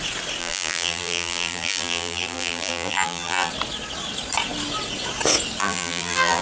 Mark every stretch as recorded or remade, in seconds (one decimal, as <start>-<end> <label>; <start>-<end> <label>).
0.0-0.4 recorded; 0.4-3.5 remade; 3.5-5.6 recorded; 5.6-6.4 remade